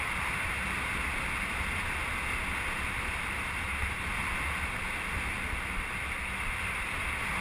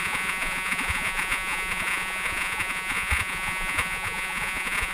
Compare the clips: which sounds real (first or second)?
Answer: first